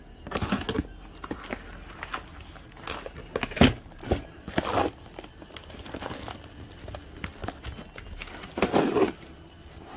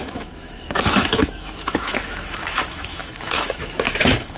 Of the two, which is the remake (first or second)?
second